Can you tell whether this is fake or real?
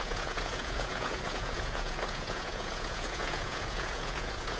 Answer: fake